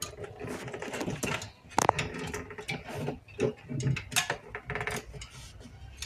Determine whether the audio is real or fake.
real